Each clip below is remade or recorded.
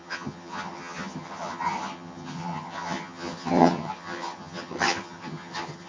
remade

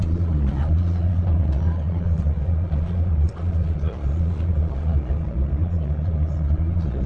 remade